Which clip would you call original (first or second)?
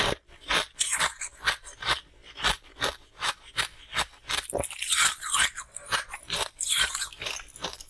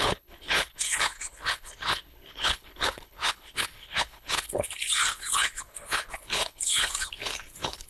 first